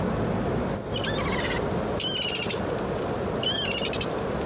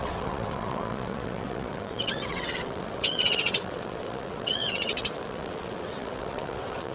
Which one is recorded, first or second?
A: first